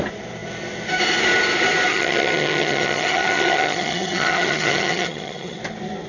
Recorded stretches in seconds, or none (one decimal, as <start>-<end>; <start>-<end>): 0.0-1.9; 5.6-6.1